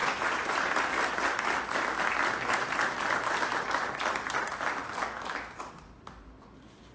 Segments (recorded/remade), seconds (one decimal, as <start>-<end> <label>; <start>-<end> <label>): 0.0-0.9 remade; 0.9-6.9 recorded